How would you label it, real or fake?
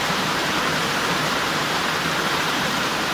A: fake